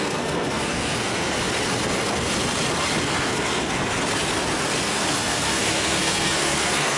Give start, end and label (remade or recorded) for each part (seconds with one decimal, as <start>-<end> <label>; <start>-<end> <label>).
0.0-1.3 remade; 1.3-3.1 recorded; 3.1-3.8 remade; 3.8-4.8 recorded; 4.8-7.0 remade

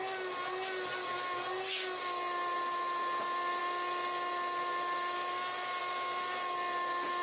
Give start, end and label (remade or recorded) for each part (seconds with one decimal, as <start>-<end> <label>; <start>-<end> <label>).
0.0-7.2 recorded

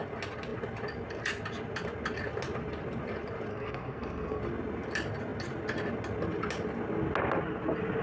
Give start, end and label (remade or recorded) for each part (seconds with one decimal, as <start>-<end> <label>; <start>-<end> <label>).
0.0-3.5 recorded; 3.5-4.4 remade; 4.4-8.0 recorded

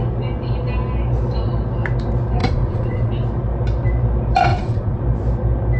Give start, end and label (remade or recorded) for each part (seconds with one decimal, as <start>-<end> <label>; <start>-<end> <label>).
0.0-2.4 recorded; 2.4-3.1 remade; 3.1-4.5 recorded; 4.5-5.0 remade; 5.0-5.8 recorded

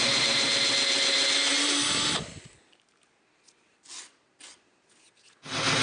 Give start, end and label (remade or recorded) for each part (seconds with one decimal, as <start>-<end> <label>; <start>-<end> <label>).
0.0-5.8 recorded

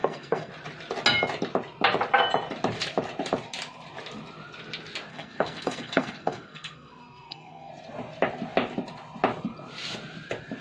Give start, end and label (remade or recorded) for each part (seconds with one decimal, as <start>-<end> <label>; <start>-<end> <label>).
0.0-0.5 remade; 0.5-5.1 recorded; 5.1-7.7 remade; 7.7-10.6 recorded

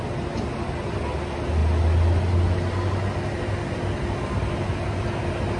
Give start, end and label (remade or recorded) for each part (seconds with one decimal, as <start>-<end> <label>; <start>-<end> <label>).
0.0-5.6 recorded

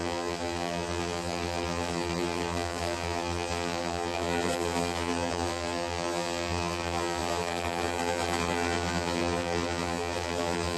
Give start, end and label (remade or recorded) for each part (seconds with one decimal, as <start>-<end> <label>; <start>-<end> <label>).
0.0-10.8 remade